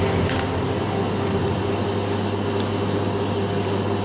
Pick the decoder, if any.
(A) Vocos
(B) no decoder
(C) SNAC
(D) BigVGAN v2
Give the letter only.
B